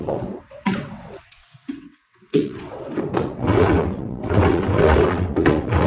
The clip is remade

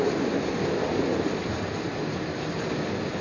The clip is recorded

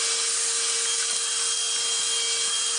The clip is recorded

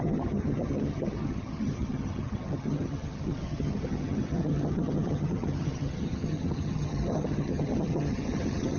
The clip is remade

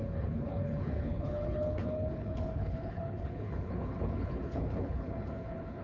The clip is remade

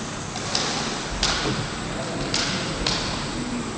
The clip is recorded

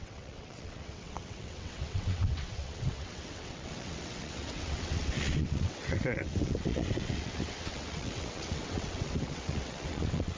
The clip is remade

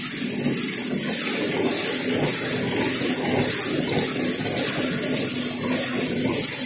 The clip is recorded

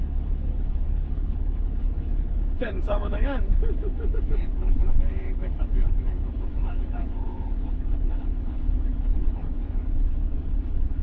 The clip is remade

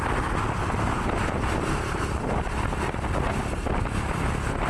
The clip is recorded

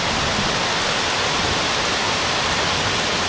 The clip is recorded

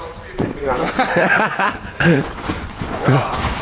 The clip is remade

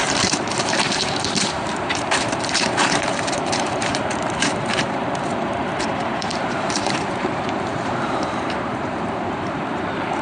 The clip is remade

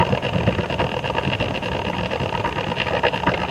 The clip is recorded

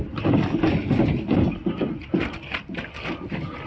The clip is recorded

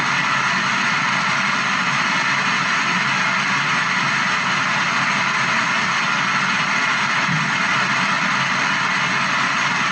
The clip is recorded